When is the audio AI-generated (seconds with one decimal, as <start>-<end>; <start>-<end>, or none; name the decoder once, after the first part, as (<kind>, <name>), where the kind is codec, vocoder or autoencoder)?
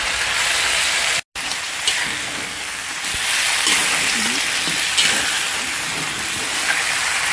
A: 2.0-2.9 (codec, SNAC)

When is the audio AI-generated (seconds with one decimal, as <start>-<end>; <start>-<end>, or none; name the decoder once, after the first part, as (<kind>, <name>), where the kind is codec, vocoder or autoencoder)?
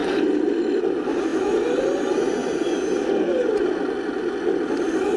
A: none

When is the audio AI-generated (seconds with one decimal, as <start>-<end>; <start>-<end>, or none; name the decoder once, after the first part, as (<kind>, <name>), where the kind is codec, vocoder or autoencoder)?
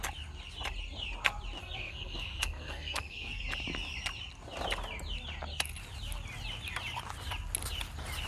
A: 1.6-3.4 (codec, SNAC)